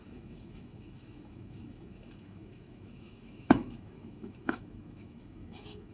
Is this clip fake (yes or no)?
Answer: yes